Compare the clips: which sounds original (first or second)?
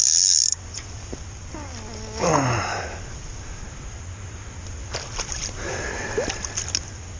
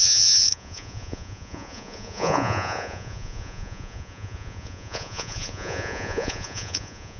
first